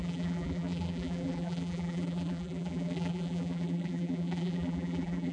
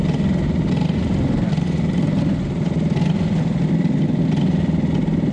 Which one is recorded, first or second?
second